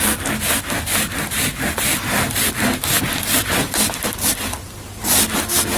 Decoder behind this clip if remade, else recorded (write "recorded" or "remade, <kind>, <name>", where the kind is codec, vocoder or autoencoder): recorded